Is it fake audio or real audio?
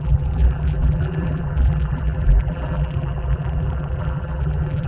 fake